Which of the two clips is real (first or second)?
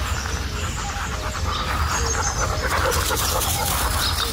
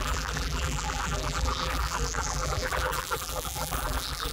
first